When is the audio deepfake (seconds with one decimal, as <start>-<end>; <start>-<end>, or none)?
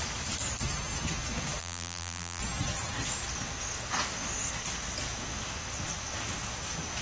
1.6-2.4